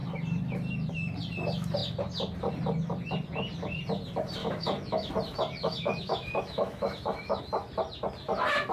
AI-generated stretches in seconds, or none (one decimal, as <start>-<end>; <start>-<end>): 4.4-5.1; 5.6-7.4